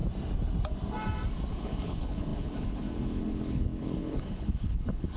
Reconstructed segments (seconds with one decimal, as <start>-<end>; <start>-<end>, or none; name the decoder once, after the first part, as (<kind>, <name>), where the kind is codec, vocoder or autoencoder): 1.5-5.2 (codec, HILCodec)